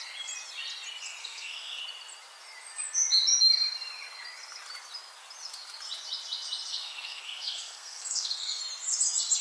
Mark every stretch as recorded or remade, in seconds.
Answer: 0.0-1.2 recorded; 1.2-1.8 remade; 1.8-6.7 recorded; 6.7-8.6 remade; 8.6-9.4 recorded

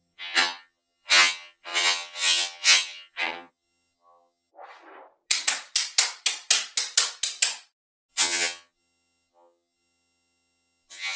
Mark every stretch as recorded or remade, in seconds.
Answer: 0.0-4.5 remade; 4.5-8.1 recorded; 8.1-11.2 remade

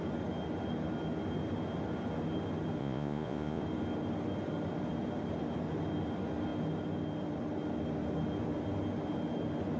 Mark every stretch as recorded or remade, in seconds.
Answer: 0.0-2.8 recorded; 2.8-3.6 remade; 3.6-9.8 recorded

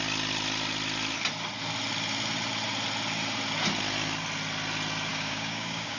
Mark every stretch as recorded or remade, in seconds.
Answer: 0.0-5.1 recorded; 5.1-6.0 remade

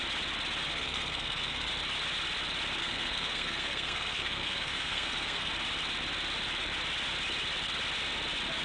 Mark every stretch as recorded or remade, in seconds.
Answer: 0.0-0.7 recorded; 0.7-1.7 remade; 1.7-2.8 recorded; 2.8-5.5 remade; 5.5-8.6 recorded

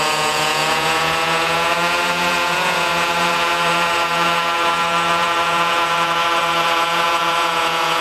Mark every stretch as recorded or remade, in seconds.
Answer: 0.0-8.0 remade

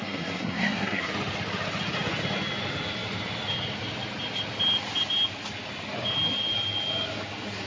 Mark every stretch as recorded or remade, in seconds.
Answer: 0.0-1.1 remade; 1.1-7.7 recorded

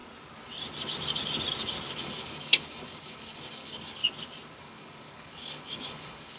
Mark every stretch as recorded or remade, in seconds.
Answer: 0.0-2.0 recorded; 2.0-4.0 remade; 4.0-4.6 recorded; 4.6-6.4 remade